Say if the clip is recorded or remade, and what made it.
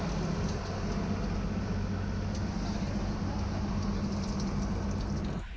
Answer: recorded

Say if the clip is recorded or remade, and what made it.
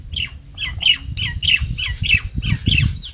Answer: recorded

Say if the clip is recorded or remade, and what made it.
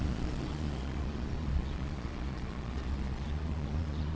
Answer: remade, vocoder, Vocos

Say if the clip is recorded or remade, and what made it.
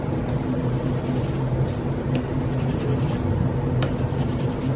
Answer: recorded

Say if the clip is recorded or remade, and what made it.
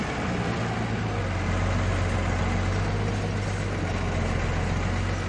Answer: recorded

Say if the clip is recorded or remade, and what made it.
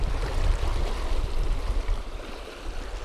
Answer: recorded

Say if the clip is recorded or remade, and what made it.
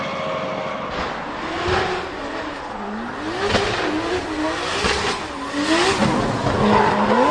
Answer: recorded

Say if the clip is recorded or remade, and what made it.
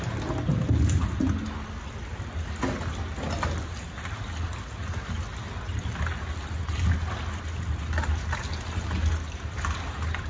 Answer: recorded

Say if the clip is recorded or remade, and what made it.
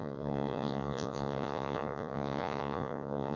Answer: remade, vocoder, Vocos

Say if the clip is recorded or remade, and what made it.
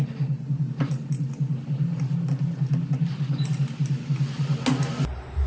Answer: recorded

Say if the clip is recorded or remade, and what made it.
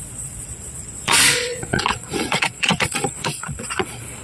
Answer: remade, vocoder, Vocos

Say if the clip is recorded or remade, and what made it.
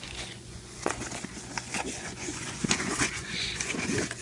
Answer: remade, vocoder, Vocos